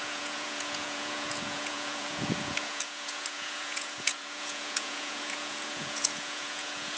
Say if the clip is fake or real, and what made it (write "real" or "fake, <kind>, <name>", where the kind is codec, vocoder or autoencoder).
fake, vocoder, Vocos